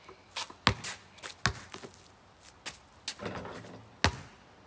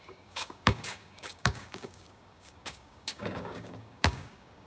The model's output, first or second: second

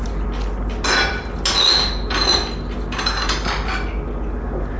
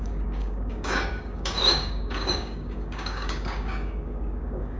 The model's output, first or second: second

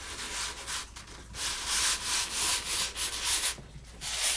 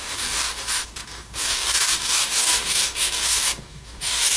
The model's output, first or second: second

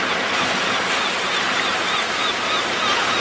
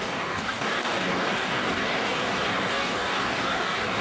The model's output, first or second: second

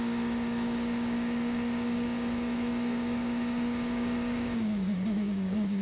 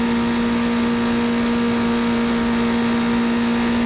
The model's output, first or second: first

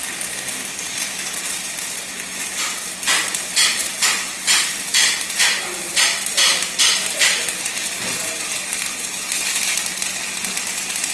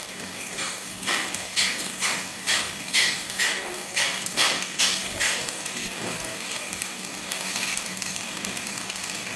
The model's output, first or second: second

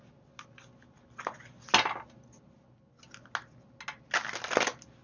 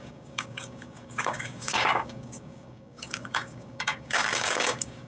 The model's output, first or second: second